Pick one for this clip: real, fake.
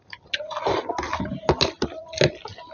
real